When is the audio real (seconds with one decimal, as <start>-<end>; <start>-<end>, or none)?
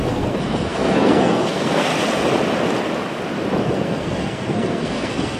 1.9-3.6